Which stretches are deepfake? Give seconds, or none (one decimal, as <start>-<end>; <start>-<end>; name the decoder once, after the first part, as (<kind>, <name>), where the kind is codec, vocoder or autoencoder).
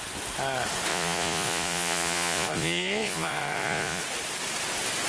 0.9-4.0 (vocoder, Vocos)